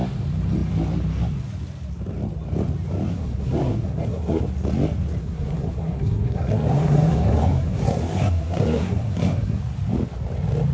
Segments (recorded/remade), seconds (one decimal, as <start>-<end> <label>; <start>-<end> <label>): 0.0-3.1 recorded; 3.1-4.4 remade; 4.4-5.2 recorded; 5.2-9.6 remade; 9.6-10.7 recorded